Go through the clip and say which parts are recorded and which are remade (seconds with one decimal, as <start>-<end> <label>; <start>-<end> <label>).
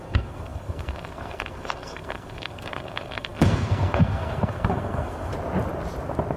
0.0-5.3 remade; 5.3-6.4 recorded